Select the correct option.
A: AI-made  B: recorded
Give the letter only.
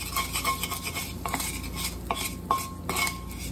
B